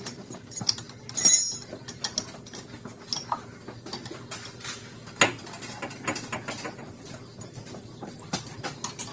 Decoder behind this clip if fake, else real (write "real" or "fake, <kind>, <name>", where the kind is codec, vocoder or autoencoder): real